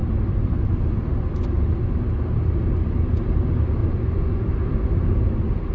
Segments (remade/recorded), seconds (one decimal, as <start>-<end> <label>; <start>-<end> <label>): 0.0-3.8 recorded; 3.8-4.4 remade; 4.4-5.7 recorded